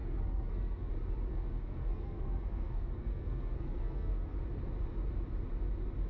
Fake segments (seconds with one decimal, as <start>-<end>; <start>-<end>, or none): 0.0-0.9; 1.3-4.4